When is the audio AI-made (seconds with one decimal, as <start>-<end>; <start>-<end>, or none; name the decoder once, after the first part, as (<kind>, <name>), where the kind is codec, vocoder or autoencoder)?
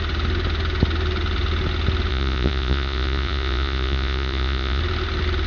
2.1-4.8 (vocoder, Vocos)